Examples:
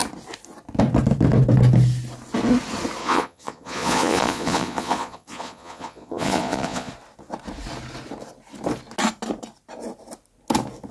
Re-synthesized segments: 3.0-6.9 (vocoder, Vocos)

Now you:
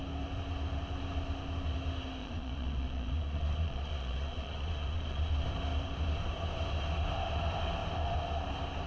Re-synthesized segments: 2.2-5.3 (vocoder, Vocos)

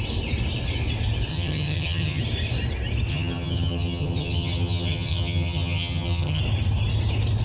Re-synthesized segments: 1.3-2.2 (vocoder, HiFi-GAN); 3.1-6.4

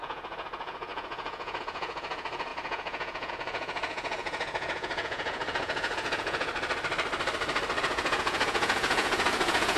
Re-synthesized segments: 0.0-6.5 (vocoder, Vocos); 7.8-9.8

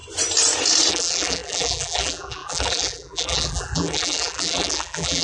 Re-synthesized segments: 0.9-5.2 (vocoder, BigVGAN v2)

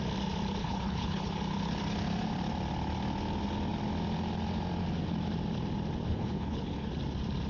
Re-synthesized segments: 0.6-1.4 (codec, HILCodec); 6.1-6.9

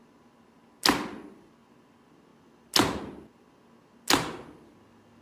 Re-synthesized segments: none

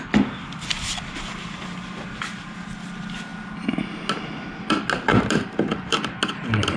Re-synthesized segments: none